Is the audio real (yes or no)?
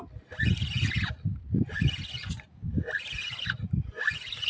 yes